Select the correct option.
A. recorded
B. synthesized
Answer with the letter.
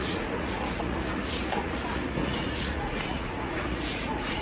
B